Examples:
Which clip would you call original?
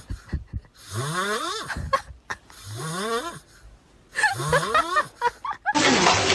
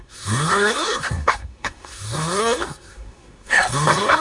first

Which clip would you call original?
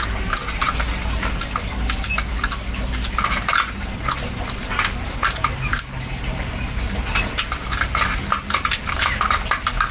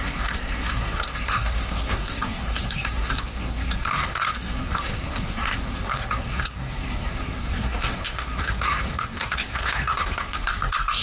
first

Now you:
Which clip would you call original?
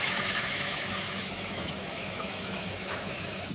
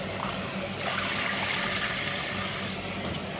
second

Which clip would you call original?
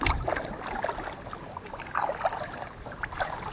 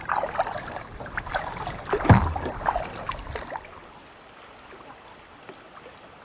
first